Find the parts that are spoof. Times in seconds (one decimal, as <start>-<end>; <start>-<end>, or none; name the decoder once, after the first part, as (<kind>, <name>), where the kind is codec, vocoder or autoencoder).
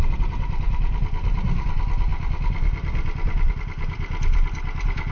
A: none